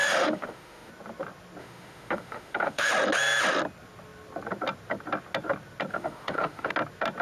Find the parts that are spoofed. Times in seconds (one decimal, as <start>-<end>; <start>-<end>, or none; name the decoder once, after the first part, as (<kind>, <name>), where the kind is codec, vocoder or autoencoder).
0.0-0.9 (autoencoder, DAC-VAE); 1.6-2.9; 5.9-6.7